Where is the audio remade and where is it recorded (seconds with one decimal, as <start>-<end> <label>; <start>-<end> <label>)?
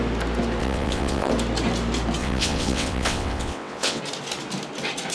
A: 0.0-0.6 recorded; 0.6-1.3 remade; 1.3-2.2 recorded; 2.2-4.0 remade; 4.0-5.1 recorded